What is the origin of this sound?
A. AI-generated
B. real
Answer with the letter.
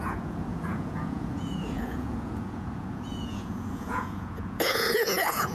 A